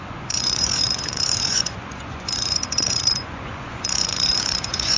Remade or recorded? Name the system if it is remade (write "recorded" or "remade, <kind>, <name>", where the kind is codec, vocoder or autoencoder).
remade, vocoder, Vocos